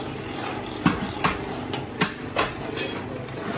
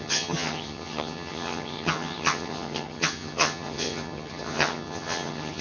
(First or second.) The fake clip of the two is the second